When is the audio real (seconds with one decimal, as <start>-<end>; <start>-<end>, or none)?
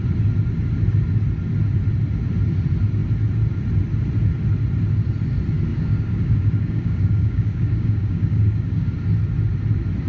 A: 0.0-5.7; 8.9-10.1